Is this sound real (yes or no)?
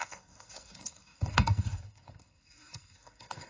no